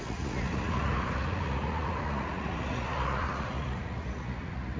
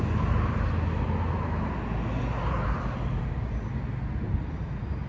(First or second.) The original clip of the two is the second